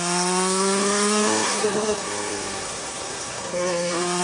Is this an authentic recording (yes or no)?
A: no